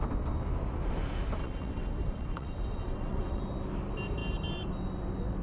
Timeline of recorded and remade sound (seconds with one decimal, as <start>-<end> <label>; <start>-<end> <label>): 0.0-1.4 recorded; 1.4-3.4 remade; 3.4-5.4 recorded